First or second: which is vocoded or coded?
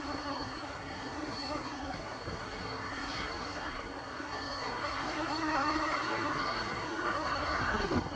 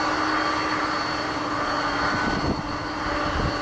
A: first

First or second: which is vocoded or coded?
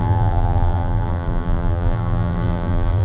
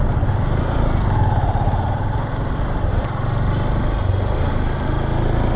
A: first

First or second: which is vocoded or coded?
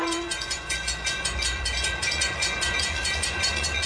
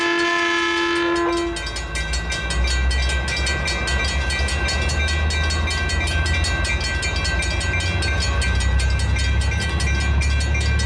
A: first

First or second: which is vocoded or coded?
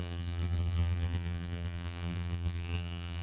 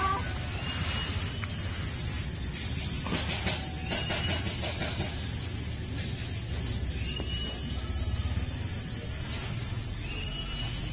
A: first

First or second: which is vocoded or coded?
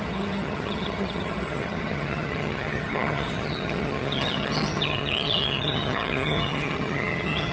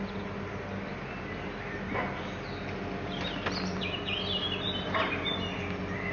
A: first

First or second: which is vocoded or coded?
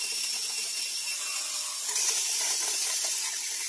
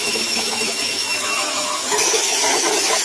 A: second